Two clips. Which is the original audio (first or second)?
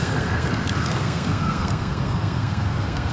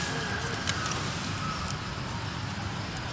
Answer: second